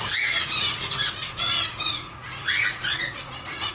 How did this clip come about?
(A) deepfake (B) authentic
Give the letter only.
A